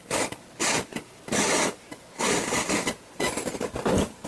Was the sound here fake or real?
real